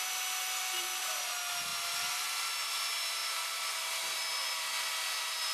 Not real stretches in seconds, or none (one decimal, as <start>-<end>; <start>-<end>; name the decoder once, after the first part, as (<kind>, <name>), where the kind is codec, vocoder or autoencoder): none